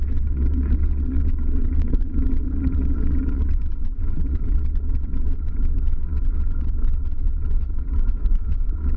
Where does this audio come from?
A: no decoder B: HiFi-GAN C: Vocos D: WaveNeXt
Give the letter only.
D